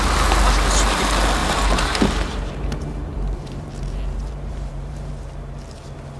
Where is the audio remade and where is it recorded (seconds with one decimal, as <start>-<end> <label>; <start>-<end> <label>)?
0.0-1.4 recorded; 1.4-5.1 remade; 5.1-6.2 recorded